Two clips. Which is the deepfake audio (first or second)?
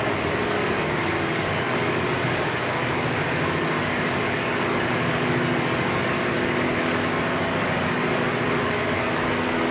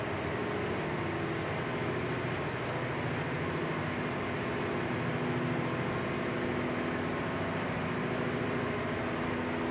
first